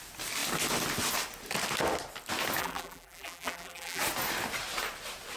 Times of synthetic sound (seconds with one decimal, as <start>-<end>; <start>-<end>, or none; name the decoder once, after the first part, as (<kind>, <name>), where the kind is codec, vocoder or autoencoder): 2.6-4.0 (vocoder, BigVGAN v2)